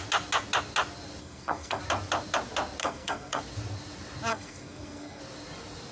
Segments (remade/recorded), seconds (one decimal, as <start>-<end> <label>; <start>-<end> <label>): 0.0-1.2 recorded; 1.2-1.8 remade; 1.8-2.8 recorded; 2.8-3.4 remade; 3.4-4.3 recorded; 4.3-5.2 remade; 5.2-5.9 recorded